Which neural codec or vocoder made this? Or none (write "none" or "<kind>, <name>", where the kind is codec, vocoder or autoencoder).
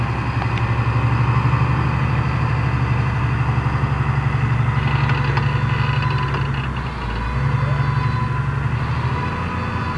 none